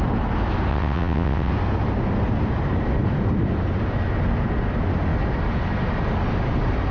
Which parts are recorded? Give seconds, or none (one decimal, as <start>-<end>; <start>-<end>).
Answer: 0.0-0.7; 1.5-6.9